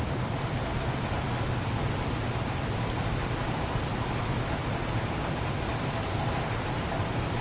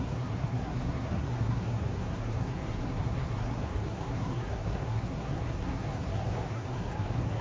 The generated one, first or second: second